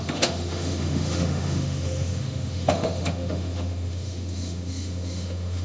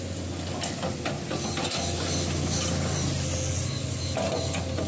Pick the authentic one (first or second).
second